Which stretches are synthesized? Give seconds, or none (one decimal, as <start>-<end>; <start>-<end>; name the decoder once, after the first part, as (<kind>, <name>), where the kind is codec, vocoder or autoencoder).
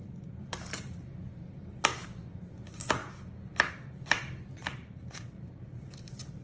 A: 0.0-3.0 (vocoder, BigVGAN v2); 3.7-6.4